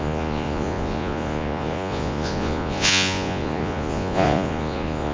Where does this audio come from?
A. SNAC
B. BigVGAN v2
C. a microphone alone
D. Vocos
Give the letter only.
D